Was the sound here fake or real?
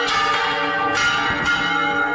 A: real